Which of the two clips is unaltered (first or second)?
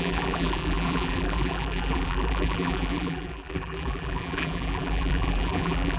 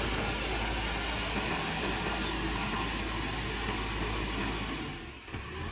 second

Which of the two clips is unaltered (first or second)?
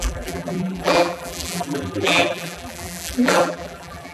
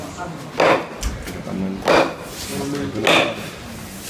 second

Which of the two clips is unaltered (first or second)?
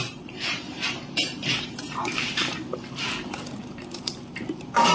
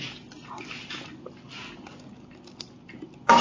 second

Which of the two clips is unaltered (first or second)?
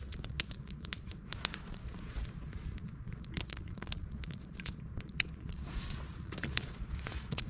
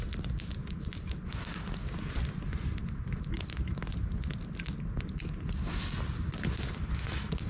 second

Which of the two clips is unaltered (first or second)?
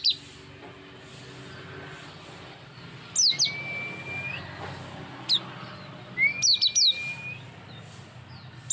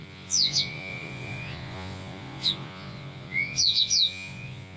first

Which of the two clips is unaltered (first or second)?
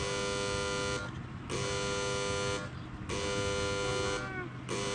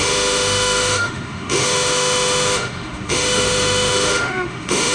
first